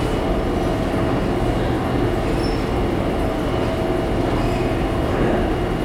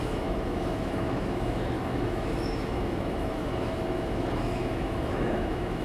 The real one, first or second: first